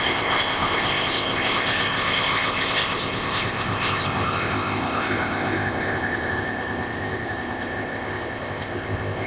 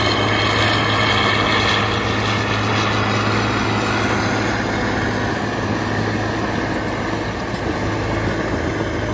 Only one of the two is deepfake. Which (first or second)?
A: first